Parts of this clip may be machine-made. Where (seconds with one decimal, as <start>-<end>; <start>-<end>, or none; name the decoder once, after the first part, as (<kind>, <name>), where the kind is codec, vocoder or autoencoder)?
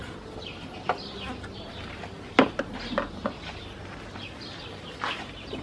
none